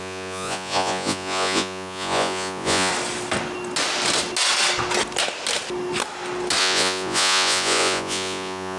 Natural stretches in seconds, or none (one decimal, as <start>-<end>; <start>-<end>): 2.9-6.6